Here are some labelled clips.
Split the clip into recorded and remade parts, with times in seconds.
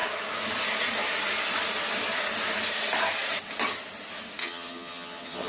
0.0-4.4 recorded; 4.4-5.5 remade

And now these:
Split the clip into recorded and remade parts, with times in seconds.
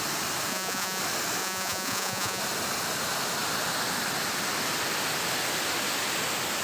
0.0-0.5 recorded; 0.5-1.0 remade; 1.0-1.4 recorded; 1.4-2.4 remade; 2.4-6.6 recorded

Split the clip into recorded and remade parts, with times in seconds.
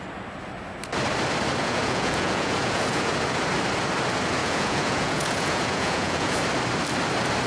0.0-1.6 recorded; 1.6-3.1 remade; 3.1-4.4 recorded; 4.4-6.4 remade; 6.4-7.5 recorded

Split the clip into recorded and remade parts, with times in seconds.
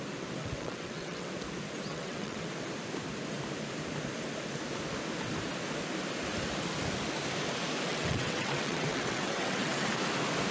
0.0-0.4 recorded; 0.4-1.3 remade; 1.3-1.9 recorded; 1.9-2.5 remade; 2.5-7.9 recorded; 7.9-9.9 remade; 9.9-10.5 recorded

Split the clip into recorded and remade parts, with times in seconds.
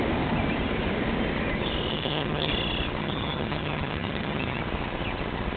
0.0-1.9 recorded; 1.9-2.5 remade; 2.5-3.0 recorded; 3.0-4.6 remade; 4.6-5.6 recorded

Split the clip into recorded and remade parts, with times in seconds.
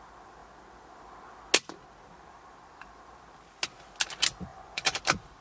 0.0-4.5 recorded; 4.5-5.0 remade; 5.0-5.4 recorded